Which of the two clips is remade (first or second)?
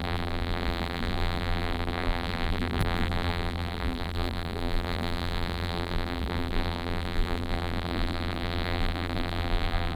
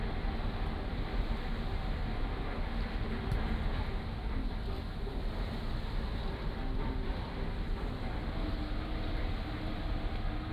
first